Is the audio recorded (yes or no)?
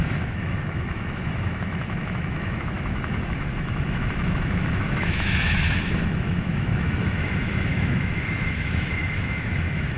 no